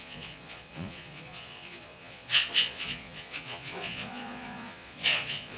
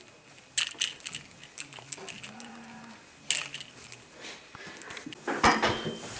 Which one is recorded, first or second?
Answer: second